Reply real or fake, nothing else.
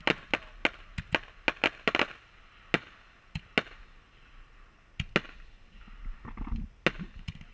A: real